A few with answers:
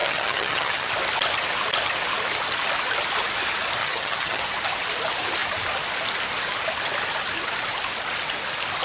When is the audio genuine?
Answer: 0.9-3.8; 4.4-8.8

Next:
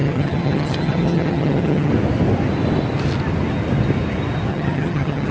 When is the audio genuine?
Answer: 1.9-4.5

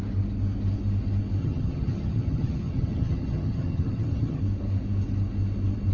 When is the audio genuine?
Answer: 0.0-1.4; 4.4-5.9

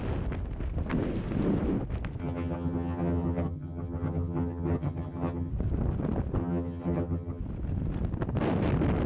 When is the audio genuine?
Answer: 0.0-2.2; 5.5-6.4; 7.4-9.1

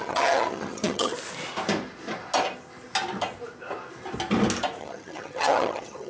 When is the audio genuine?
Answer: 1.1-4.8